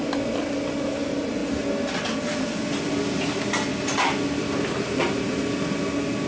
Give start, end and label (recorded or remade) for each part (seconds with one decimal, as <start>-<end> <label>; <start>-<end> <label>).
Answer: 0.0-6.3 recorded